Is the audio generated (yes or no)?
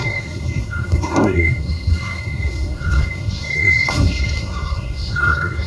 yes